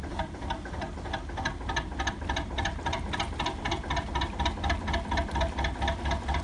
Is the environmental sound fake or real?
real